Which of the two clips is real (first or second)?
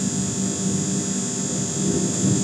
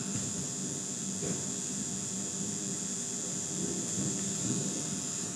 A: first